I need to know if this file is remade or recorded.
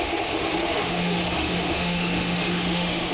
remade